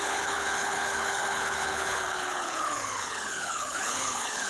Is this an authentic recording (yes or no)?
no